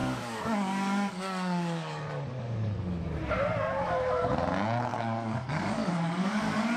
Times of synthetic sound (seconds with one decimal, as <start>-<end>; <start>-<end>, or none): 0.0-3.2; 4.9-6.8